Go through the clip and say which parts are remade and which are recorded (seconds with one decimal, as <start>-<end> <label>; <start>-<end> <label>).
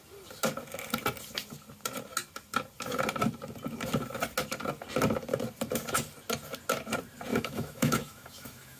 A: 0.0-7.3 recorded; 7.3-8.8 remade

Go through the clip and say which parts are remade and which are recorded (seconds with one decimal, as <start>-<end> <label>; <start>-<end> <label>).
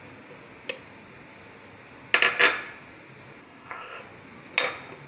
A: 0.0-3.4 recorded; 3.4-4.0 remade; 4.0-5.1 recorded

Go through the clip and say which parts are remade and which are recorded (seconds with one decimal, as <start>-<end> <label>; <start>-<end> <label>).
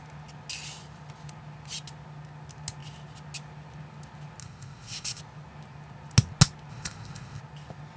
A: 0.0-4.4 recorded; 4.4-5.2 remade; 5.2-6.7 recorded; 6.7-7.4 remade; 7.4-8.0 recorded